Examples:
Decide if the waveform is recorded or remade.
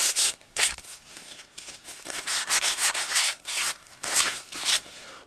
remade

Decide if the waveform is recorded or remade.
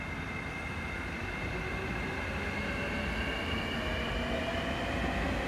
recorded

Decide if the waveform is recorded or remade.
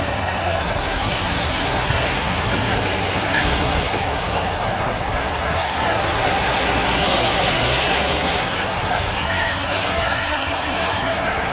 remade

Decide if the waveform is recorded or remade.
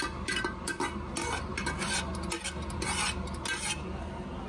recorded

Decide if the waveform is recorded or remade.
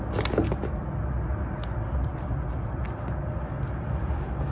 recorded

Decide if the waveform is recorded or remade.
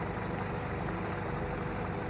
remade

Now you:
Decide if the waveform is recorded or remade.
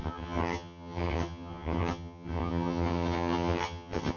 remade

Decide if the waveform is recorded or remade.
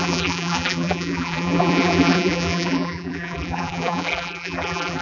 remade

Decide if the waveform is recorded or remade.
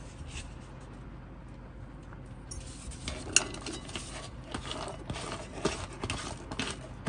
recorded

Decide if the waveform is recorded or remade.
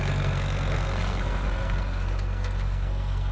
remade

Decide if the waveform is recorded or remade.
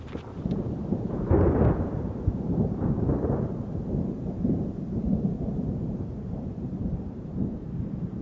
remade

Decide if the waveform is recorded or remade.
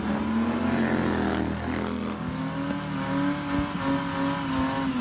recorded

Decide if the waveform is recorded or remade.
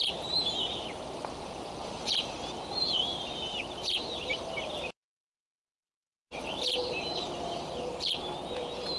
remade